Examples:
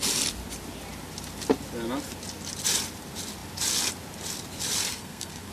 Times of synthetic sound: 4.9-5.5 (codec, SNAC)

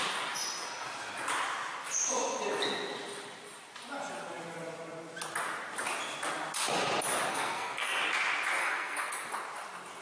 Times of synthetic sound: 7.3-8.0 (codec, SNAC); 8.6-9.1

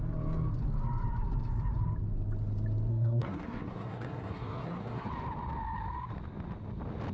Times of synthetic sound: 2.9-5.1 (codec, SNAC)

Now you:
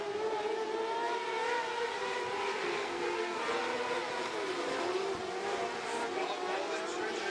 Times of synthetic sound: 2.6-3.4 (codec, SNAC)

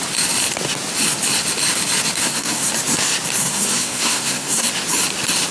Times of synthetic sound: 2.2-2.7 (codec, SNAC); 3.4-4.7

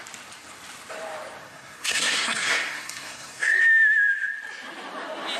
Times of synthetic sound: 1.4-3.6 (codec, SNAC)

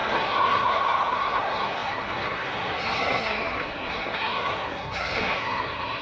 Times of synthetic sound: 0.0-6.0 (codec, SNAC)